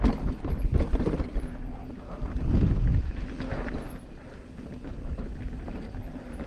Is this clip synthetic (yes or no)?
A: no